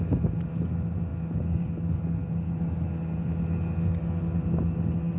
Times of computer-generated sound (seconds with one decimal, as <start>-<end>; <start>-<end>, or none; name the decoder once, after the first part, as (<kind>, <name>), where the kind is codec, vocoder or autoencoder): none